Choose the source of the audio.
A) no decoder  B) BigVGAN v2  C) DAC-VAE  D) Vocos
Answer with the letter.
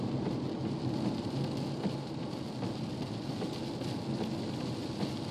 A